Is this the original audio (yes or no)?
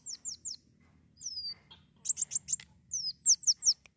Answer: yes